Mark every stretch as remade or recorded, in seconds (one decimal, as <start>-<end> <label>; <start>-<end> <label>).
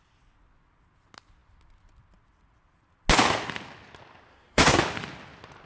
0.0-4.3 recorded; 4.3-4.8 remade; 4.8-5.7 recorded